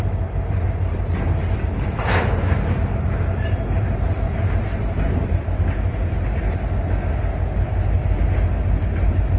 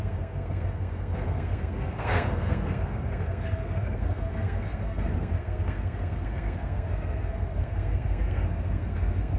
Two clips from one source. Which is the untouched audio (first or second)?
first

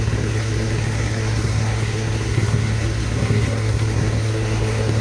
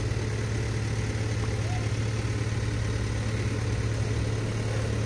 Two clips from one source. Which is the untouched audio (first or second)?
second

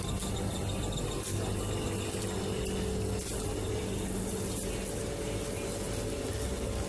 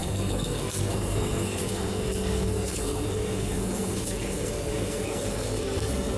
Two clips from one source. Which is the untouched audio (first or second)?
first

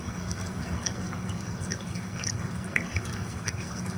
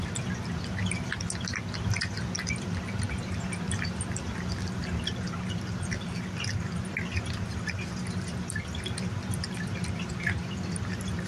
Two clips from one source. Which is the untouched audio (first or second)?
second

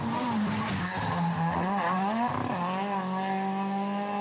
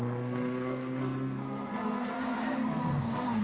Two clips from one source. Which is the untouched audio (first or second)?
first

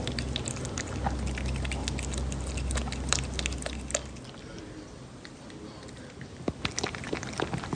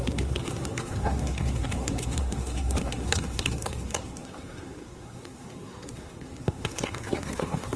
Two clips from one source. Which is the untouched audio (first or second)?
first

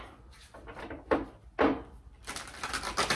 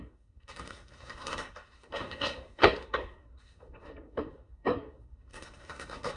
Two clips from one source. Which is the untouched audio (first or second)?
first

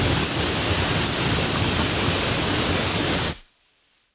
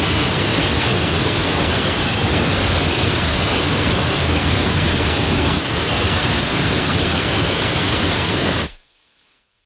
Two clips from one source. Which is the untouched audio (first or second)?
first